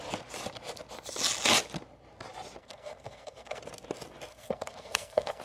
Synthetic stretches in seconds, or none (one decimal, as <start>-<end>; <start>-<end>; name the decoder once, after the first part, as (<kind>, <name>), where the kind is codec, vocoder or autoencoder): 2.6-3.6 (codec, SNAC); 4.3-5.4